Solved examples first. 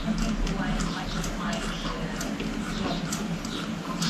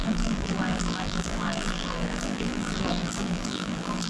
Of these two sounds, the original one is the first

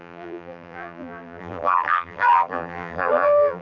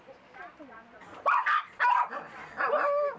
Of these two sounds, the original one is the second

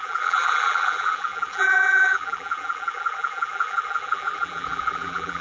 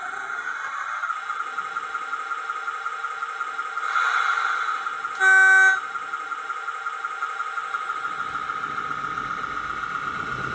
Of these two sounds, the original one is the second